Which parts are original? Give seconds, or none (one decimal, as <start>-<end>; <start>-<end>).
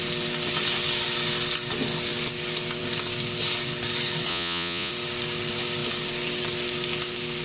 0.0-4.3; 4.9-7.4